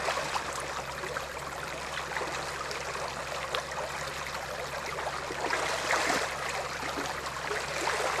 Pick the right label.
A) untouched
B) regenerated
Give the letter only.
A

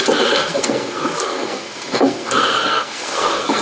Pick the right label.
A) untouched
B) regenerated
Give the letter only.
B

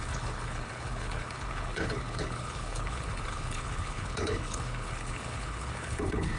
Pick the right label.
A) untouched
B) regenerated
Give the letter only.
B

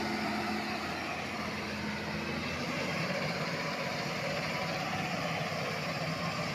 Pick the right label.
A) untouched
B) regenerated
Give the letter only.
A